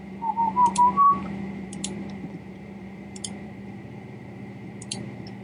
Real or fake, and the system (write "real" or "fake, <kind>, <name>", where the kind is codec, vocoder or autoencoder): fake, vocoder, BigVGAN v2